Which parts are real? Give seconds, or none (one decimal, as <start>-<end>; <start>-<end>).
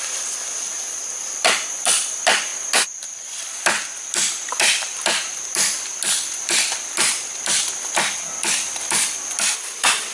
2.5-4.0